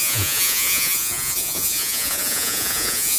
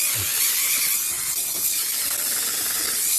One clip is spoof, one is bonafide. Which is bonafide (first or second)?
second